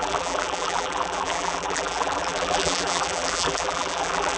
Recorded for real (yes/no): no